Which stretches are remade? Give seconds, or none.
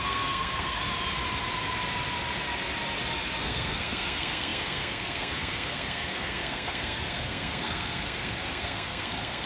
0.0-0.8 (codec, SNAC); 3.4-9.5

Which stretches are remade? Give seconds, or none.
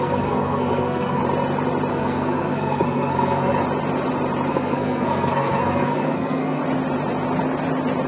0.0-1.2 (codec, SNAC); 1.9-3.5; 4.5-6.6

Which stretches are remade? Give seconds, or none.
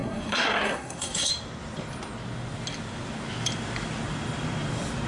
0.0-1.3 (codec, SNAC)